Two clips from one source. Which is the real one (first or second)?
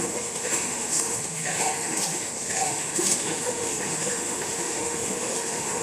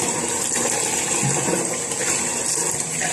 second